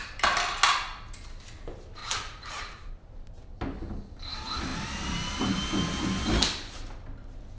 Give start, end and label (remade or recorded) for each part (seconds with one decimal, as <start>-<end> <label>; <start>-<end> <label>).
0.0-2.0 recorded; 2.0-2.9 remade; 2.9-7.6 recorded